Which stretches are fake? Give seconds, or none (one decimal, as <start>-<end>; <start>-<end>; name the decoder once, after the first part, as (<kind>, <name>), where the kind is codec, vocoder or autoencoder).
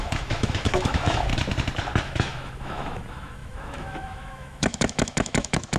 0.0-1.3 (autoencoder, DAC-VAE); 2.0-5.8